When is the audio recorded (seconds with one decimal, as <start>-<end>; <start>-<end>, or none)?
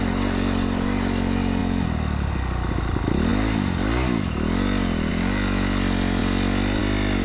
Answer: 0.0-7.2